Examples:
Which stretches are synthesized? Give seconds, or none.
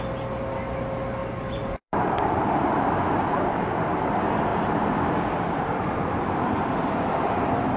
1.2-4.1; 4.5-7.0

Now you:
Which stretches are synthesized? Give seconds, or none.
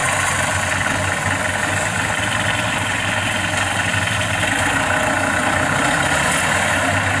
none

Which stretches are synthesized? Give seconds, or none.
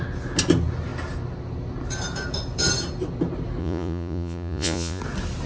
3.6-5.0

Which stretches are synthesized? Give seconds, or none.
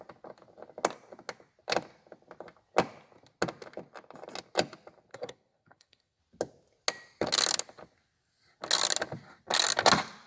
5.1-6.2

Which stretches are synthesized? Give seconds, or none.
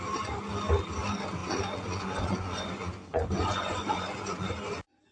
1.4-4.5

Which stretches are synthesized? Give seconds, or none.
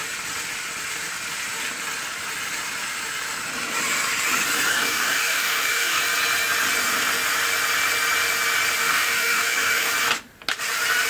4.7-6.0; 8.8-9.9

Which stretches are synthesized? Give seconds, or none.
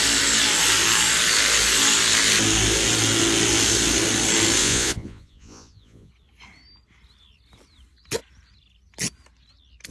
4.6-6.1